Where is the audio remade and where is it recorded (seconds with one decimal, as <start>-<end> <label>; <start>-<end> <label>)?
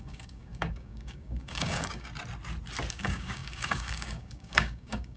0.0-2.1 remade; 2.1-2.9 recorded; 2.9-5.2 remade